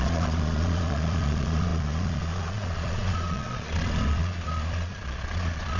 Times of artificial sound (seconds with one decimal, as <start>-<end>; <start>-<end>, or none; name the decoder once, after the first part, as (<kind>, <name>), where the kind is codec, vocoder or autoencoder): 0.0-5.8 (vocoder, Vocos)